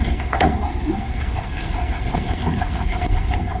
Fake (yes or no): yes